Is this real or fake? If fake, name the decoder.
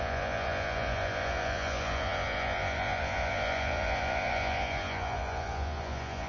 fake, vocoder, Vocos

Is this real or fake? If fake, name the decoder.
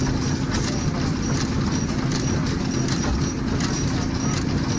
real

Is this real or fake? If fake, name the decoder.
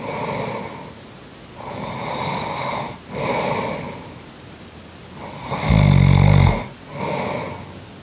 real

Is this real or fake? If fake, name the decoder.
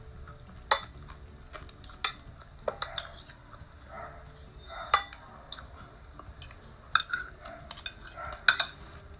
real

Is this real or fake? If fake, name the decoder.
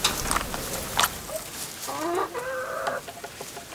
real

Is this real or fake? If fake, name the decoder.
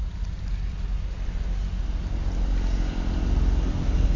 real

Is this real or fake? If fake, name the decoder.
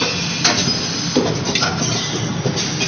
real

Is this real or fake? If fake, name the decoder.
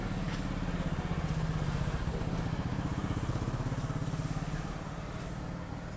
real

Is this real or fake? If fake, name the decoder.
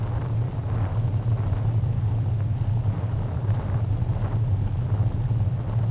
real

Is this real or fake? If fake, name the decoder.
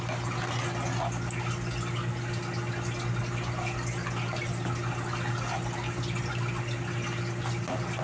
real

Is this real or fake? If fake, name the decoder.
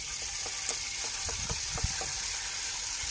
real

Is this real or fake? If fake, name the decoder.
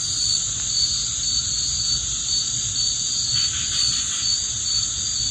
real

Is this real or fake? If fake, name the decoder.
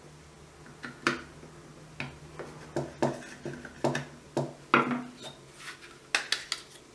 real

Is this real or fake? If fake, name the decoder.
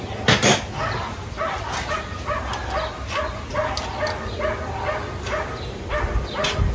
real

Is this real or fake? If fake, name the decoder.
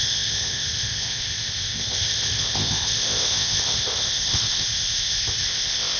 fake, codec, ZipCodec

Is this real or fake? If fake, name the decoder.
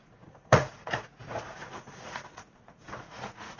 fake, vocoder, Vocos